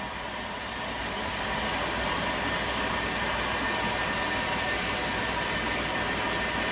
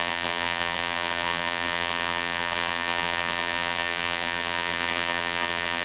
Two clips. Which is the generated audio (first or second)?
second